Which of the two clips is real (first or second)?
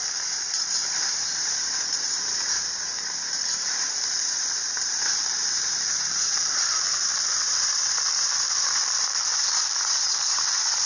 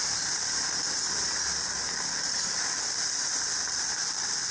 second